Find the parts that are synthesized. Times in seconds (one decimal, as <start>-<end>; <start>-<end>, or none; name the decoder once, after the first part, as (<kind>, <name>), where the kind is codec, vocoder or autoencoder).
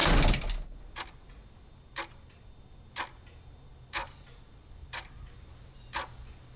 none